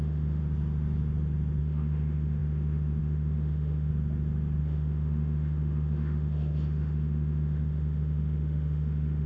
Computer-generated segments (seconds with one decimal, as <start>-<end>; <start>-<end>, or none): 0.0-0.4; 1.6-3.9; 4.6-9.3